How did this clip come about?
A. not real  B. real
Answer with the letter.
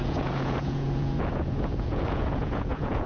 A